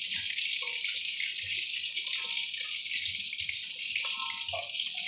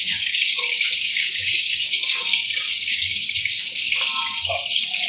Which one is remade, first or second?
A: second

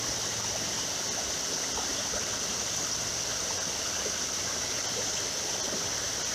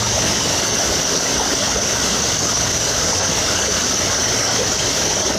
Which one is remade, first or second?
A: second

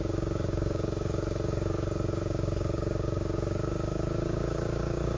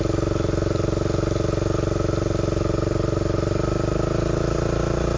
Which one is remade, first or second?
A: first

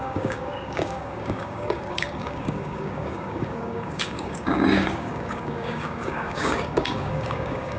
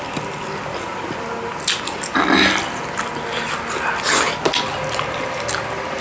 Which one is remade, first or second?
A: first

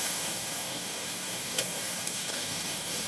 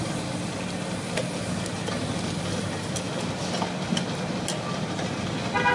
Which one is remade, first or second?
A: first